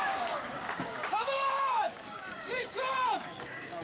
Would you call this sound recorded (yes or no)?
no